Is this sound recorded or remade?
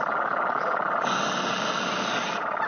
recorded